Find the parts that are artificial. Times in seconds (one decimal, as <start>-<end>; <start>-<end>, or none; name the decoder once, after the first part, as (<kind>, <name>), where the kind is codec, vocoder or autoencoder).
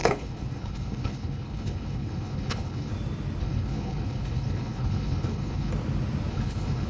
0.0-2.9 (codec, HILCodec); 3.4-5.7; 6.3-6.9